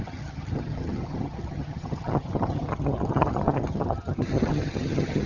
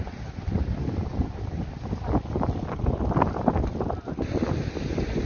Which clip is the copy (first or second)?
first